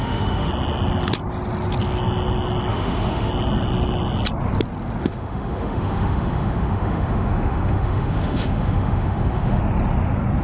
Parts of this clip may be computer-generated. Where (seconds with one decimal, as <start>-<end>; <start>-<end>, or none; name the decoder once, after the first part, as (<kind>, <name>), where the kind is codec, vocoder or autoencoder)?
0.0-0.5 (autoencoder, DAC-VAE); 2.7-3.3; 5.0-9.6